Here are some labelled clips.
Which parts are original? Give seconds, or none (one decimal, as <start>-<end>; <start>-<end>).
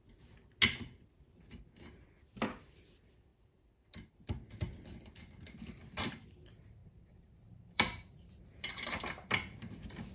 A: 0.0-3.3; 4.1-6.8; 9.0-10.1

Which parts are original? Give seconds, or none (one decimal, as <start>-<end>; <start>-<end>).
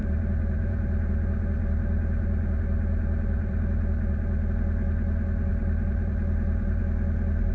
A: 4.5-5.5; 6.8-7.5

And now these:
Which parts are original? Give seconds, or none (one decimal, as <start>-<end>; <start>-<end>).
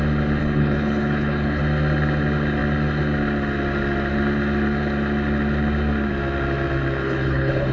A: 0.0-0.4; 1.6-7.0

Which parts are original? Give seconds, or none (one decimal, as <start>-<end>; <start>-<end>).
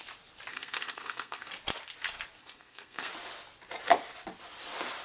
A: 0.0-0.5; 1.5-2.4; 3.1-5.0